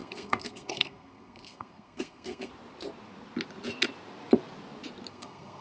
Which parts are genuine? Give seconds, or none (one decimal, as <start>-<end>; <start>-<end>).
2.5-5.1